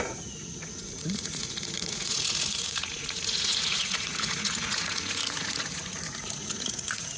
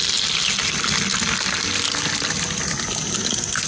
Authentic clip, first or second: second